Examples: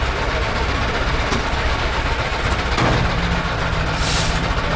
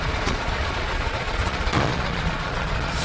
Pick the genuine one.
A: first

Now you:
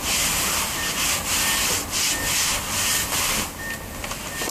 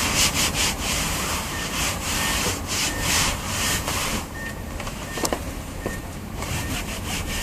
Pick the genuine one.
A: first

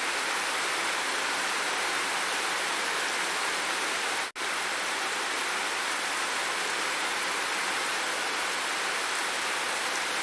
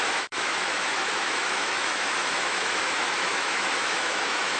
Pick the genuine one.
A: first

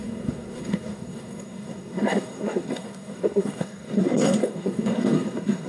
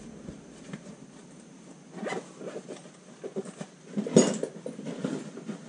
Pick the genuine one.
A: second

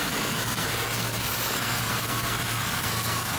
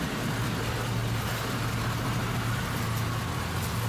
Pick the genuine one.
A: second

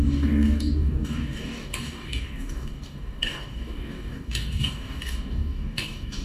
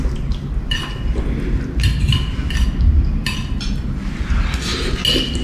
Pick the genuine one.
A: second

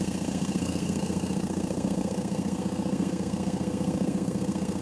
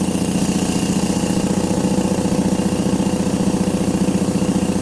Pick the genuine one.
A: second